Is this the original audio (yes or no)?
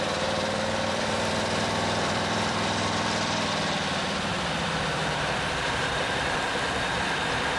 no